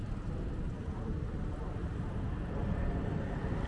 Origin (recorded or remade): recorded